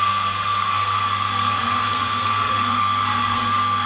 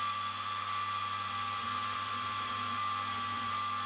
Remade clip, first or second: first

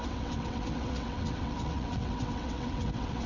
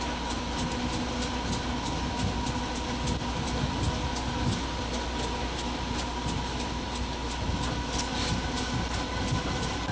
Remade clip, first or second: first